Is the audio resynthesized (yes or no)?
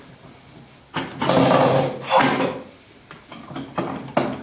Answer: no